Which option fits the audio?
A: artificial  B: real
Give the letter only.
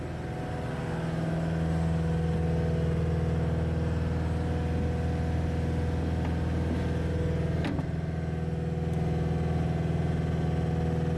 B